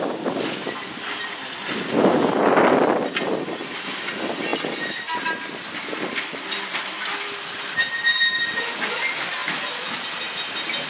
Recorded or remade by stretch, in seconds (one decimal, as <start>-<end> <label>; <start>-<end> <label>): 0.0-10.9 recorded